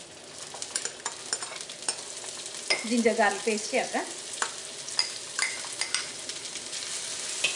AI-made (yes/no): no